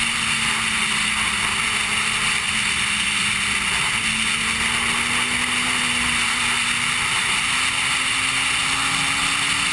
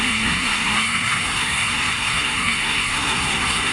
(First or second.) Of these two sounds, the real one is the first